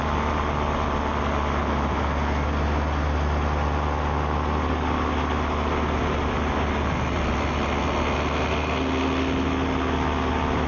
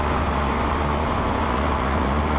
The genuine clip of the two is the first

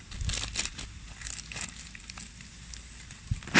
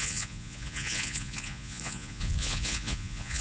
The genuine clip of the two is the first